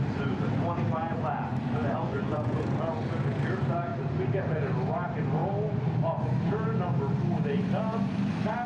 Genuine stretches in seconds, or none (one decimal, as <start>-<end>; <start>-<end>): 0.0-1.8; 2.6-8.7